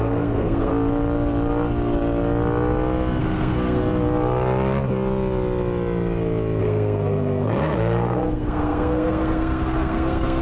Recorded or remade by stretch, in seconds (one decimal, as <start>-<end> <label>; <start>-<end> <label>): 0.0-0.7 remade; 0.7-3.2 recorded; 3.2-3.8 remade; 3.8-6.6 recorded; 6.6-10.4 remade